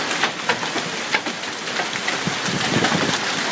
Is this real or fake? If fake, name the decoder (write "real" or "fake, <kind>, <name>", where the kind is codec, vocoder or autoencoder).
real